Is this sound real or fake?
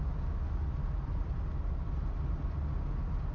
real